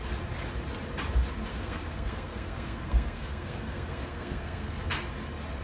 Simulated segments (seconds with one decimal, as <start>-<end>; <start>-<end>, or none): 1.5-4.9

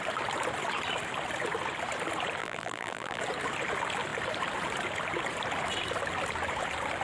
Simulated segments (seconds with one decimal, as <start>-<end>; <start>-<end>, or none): 2.4-3.2

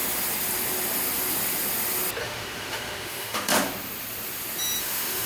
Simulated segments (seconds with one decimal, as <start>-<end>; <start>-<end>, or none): 2.2-3.5; 4.8-5.3

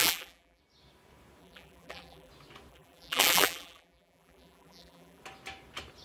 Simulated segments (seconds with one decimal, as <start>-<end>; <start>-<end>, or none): 0.0-0.6; 1.4-2.3; 2.7-5.2

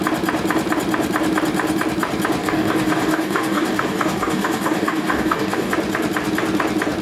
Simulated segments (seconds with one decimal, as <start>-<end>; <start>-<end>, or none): 2.4-5.7

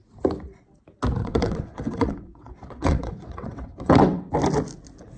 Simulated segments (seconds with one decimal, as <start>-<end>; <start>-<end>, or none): 1.2-4.3